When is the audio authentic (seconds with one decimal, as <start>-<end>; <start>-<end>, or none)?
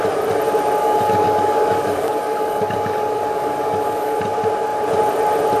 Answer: 0.0-0.8; 4.2-5.6